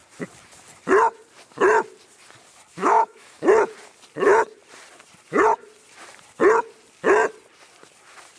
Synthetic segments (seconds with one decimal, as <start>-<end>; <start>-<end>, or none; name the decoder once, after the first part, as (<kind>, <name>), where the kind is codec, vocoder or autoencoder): 2.7-3.4 (autoencoder, DAC-VAE)